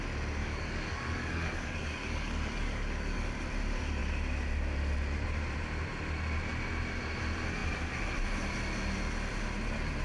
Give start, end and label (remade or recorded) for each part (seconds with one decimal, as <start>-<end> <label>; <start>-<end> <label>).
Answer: 0.0-0.4 recorded; 0.4-3.3 remade; 3.3-10.0 recorded